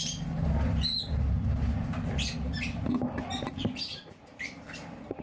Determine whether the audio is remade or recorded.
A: recorded